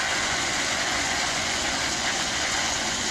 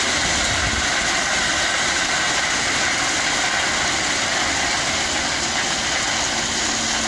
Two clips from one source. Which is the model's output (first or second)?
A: first